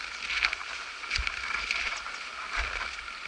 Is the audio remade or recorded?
remade